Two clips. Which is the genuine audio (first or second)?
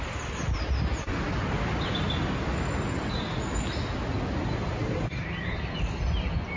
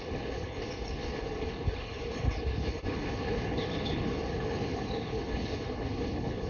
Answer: first